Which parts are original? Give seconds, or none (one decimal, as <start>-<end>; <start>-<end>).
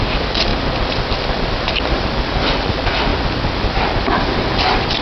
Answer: 3.1-3.8